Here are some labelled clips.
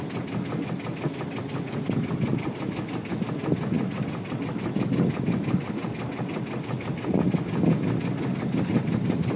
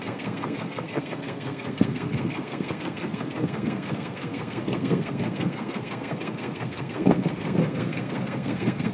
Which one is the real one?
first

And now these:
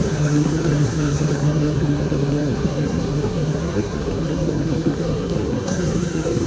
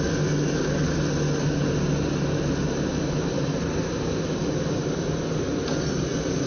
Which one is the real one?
second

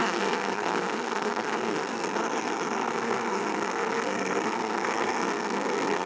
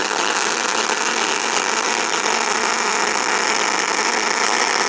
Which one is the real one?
second